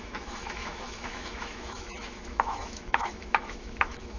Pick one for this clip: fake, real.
fake